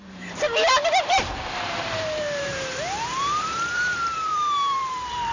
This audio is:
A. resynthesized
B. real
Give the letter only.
A